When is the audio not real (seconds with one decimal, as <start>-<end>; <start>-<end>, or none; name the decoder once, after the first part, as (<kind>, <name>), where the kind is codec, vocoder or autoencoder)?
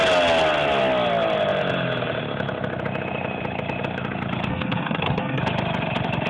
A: 4.5-5.4 (codec, SNAC)